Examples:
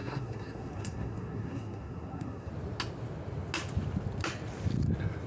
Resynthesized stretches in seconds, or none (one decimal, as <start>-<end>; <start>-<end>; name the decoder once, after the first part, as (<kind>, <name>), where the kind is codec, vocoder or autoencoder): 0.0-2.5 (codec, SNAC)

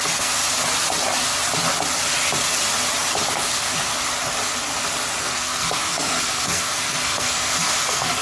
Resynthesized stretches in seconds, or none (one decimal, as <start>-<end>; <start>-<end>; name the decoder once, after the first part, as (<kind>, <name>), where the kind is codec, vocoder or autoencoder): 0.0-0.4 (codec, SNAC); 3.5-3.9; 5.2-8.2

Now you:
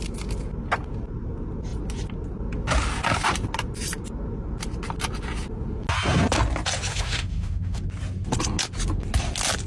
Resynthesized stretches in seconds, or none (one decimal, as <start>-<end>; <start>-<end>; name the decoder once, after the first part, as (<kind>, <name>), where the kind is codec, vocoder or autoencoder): 6.9-7.8 (autoencoder, DAC-VAE)

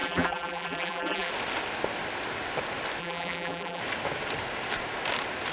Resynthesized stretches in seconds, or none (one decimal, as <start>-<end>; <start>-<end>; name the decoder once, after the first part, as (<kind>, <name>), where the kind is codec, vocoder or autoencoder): 0.0-1.3 (vocoder, BigVGAN v2); 3.0-3.8

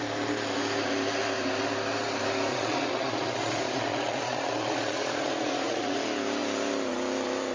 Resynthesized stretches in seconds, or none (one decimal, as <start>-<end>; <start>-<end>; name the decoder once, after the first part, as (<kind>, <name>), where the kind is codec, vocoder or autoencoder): 2.5-6.0 (vocoder, Vocos)

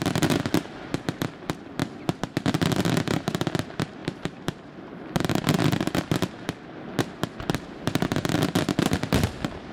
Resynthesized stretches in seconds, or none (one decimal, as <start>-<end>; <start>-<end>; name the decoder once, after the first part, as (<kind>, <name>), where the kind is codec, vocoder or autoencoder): 4.0-5.4 (vocoder, BigVGAN v2)

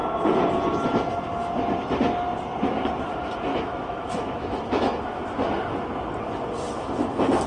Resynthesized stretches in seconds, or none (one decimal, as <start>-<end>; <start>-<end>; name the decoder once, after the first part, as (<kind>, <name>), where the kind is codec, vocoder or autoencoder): 3.5-5.2 (autoencoder, DAC-VAE)